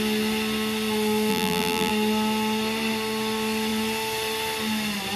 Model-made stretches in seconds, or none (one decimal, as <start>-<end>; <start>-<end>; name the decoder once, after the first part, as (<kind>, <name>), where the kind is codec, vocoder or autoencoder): 1.3-1.9 (vocoder, BigVGAN v2)